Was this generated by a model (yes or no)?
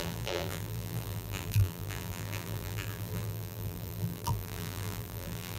yes